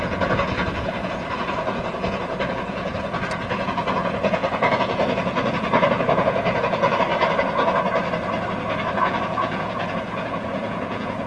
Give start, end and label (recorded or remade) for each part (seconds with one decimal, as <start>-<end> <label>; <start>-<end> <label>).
0.0-7.1 remade; 7.1-9.0 recorded; 9.0-11.3 remade